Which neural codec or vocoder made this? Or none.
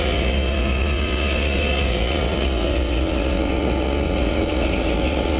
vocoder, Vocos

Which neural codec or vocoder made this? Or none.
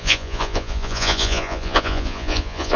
vocoder, Vocos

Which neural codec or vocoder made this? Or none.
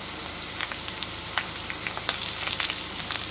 none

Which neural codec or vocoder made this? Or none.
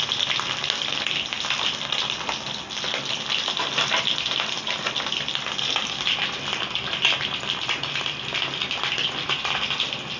none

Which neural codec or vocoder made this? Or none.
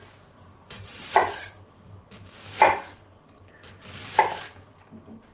none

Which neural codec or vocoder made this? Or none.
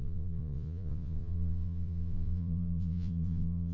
vocoder, Vocos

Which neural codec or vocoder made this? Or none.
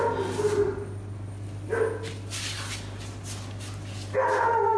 none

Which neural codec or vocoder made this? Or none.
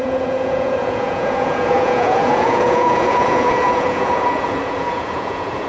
vocoder, Vocos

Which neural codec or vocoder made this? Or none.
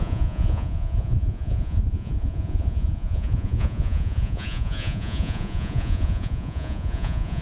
vocoder, Vocos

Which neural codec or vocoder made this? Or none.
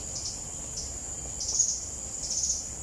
none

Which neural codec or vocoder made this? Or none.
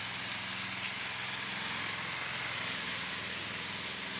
none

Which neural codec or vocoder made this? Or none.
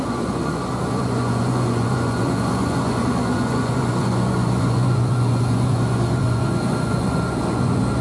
vocoder, Vocos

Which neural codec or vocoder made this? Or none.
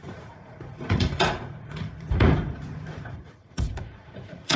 vocoder, Vocos